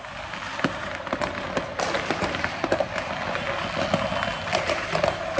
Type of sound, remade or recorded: recorded